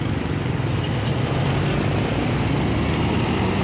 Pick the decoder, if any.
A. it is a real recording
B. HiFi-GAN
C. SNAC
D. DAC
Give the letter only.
A